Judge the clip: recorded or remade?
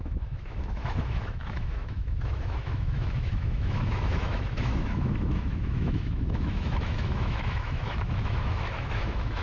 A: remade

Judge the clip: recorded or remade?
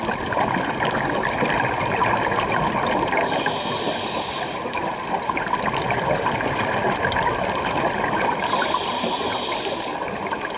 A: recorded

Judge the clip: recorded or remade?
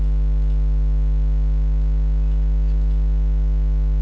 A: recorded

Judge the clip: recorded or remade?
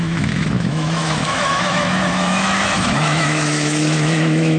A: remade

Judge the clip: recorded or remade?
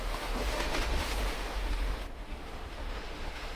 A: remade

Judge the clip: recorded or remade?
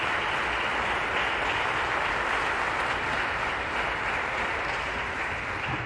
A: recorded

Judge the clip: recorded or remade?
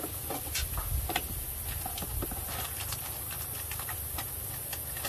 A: recorded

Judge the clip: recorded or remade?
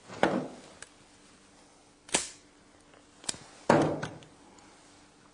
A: recorded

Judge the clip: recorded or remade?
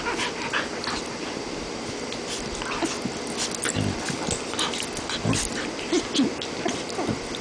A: recorded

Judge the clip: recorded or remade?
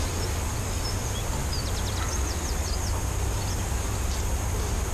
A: recorded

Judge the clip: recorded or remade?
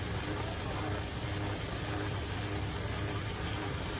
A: recorded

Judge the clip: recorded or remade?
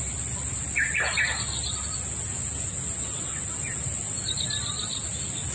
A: recorded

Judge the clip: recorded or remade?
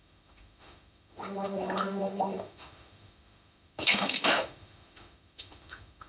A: remade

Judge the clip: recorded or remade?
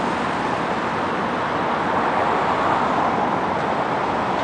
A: recorded